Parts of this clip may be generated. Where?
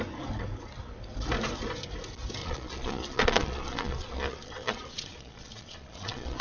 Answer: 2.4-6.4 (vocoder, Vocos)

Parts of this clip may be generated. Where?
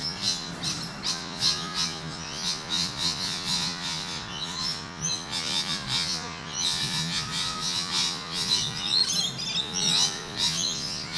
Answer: 0.0-0.5 (vocoder, Vocos); 1.1-9.0; 9.6-11.2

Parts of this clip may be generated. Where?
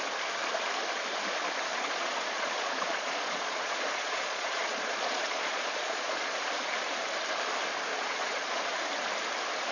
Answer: 1.7-6.4 (vocoder, Vocos); 7.9-8.7